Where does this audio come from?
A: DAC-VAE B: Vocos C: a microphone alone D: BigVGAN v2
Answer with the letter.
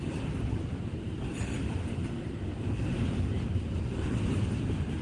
D